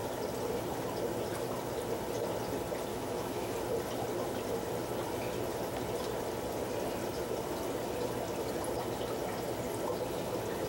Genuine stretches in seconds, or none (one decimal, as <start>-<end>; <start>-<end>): 0.0-2.9; 3.5-10.7